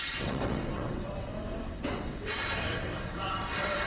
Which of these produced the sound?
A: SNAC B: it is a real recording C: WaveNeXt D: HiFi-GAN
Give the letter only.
C